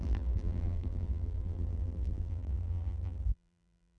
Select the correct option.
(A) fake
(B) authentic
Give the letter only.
A